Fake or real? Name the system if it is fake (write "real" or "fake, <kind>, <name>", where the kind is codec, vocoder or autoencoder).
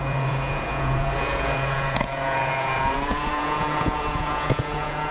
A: fake, vocoder, Vocos